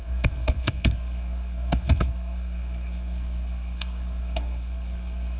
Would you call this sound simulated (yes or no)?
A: yes